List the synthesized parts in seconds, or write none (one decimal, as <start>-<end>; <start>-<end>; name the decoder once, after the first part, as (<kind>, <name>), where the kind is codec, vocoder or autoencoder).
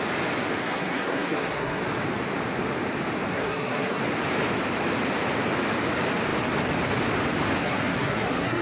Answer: 0.6-1.8 (codec, SNAC); 3.3-4.0; 7.6-8.6